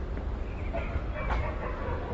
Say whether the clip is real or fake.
real